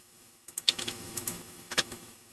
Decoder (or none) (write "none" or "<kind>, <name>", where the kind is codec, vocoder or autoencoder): autoencoder, DAC-VAE